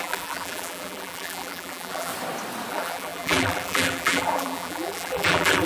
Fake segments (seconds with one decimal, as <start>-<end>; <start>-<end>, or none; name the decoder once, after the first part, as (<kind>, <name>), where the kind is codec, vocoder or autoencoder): 0.0-2.1 (vocoder, BigVGAN v2); 2.7-5.7